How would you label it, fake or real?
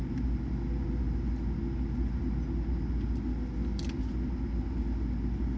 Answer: real